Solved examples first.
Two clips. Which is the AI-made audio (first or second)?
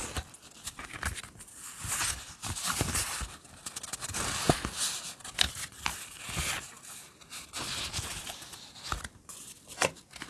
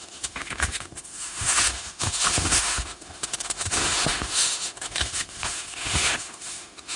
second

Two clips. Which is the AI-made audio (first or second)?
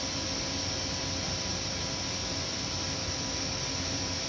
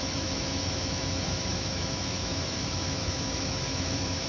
second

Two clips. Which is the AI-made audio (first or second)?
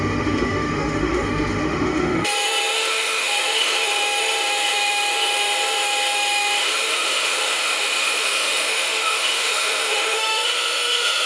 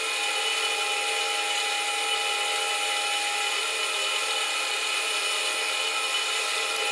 first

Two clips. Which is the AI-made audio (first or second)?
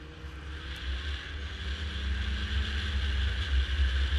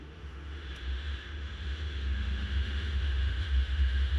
second